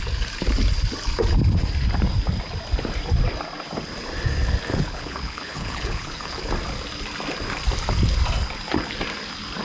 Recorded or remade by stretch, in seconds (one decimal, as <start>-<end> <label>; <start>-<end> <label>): 0.0-4.7 recorded; 4.7-6.5 remade; 6.5-9.6 recorded